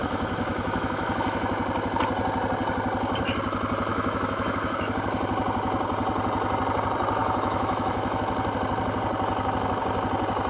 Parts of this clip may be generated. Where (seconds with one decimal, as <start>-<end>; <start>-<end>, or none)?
0.0-1.5; 3.9-4.9; 7.2-8.2